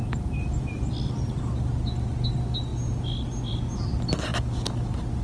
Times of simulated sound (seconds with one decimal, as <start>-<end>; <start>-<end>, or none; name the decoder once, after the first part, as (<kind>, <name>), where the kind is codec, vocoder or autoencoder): none